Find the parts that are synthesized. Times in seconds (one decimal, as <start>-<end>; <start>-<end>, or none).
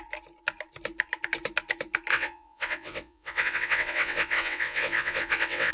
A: 2.1-5.7